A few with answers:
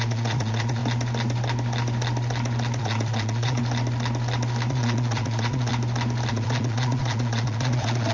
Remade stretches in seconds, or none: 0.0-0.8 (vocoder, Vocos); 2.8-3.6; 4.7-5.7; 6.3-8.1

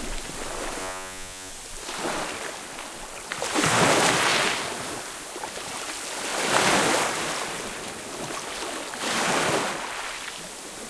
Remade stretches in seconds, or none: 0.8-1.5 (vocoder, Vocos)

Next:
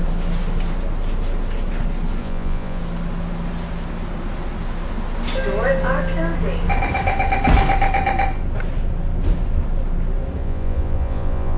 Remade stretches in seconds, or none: 2.2-2.8 (vocoder, Vocos); 10.4-11.6

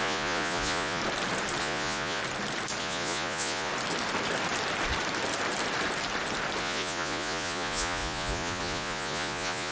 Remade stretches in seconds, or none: 0.0-1.0 (vocoder, Vocos); 1.6-2.2; 2.8-3.7; 6.6-9.7

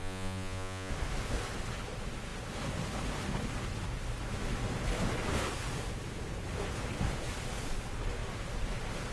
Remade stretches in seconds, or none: 0.0-0.9 (vocoder, Vocos)